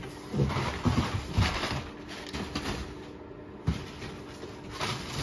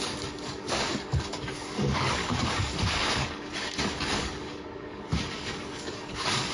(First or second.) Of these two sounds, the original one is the first